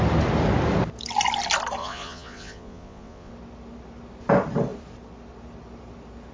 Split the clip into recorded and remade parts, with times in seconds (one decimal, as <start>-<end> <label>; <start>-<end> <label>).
0.0-1.8 recorded; 1.8-3.3 remade; 3.3-6.3 recorded